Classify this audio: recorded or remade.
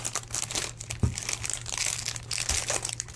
recorded